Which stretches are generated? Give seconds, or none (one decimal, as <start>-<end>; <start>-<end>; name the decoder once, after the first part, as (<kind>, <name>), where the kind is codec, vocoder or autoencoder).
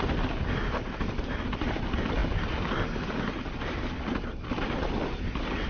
none